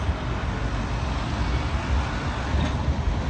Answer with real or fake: real